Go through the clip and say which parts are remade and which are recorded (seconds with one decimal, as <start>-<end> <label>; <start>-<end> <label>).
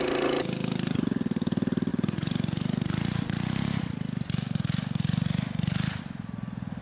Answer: 0.0-6.8 recorded